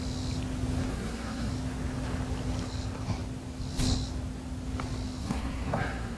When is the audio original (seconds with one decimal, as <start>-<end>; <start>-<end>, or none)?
0.0-0.9; 1.5-5.2